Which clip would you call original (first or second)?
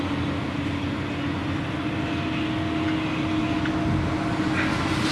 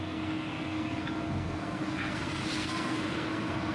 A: first